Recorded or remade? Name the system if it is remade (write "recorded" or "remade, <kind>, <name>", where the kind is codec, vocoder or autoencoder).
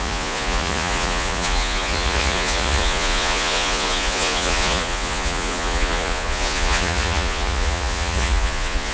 remade, vocoder, Vocos